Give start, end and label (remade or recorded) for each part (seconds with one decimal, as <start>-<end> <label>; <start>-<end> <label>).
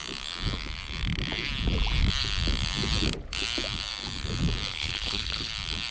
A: 0.0-4.7 recorded; 4.7-5.5 remade; 5.5-5.9 recorded